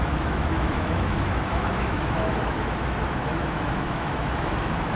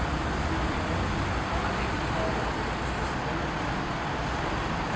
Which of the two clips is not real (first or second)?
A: first